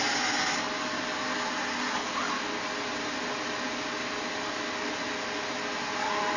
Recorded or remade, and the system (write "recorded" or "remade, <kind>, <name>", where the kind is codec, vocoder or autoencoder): recorded